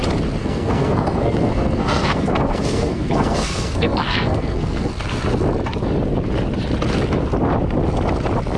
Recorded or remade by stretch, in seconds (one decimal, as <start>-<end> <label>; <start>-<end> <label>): 0.0-0.4 recorded; 0.4-4.9 remade; 4.9-8.6 recorded

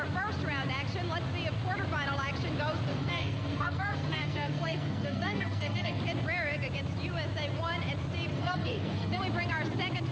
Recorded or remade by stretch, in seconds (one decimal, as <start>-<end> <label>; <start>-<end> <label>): 0.0-2.9 recorded; 2.9-6.0 remade; 6.0-8.3 recorded; 8.3-9.2 remade; 9.2-10.1 recorded

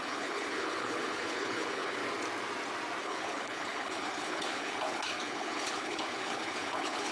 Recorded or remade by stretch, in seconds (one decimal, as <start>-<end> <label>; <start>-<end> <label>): 0.0-2.0 remade; 2.0-3.0 recorded; 3.0-7.1 remade